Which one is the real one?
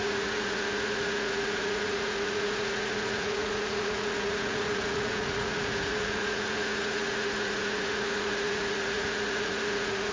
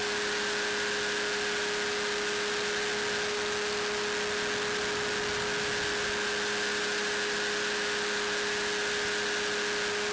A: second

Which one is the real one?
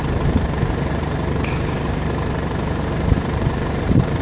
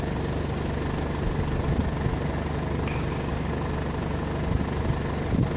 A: second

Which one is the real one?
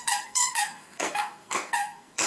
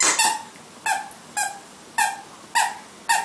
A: second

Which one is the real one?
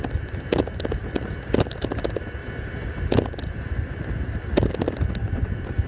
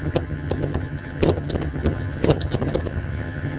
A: first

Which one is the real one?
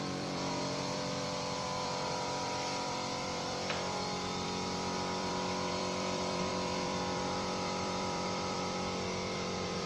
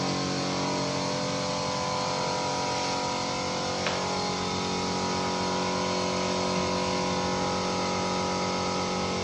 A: second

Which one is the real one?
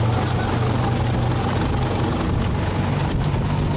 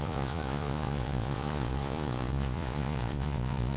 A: first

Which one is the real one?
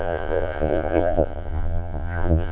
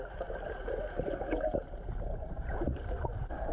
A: second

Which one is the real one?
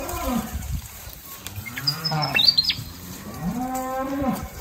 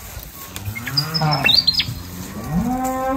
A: second